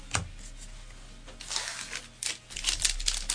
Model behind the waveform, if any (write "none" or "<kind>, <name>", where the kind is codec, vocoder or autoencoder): none